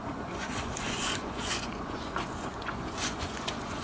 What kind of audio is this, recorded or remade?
remade